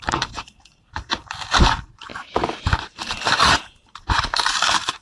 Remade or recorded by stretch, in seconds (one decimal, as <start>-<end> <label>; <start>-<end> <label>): 0.0-2.1 remade; 2.1-2.6 recorded; 2.6-5.0 remade